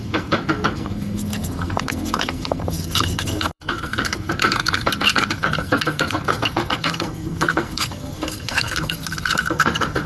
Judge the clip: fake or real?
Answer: fake